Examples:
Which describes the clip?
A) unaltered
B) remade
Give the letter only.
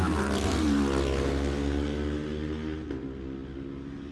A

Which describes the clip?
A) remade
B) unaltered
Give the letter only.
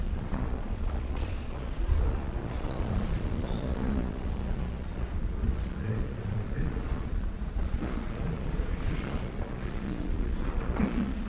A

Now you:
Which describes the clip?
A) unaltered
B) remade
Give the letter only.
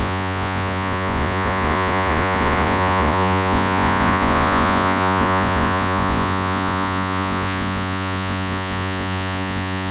B